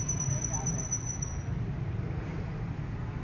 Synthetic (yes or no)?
no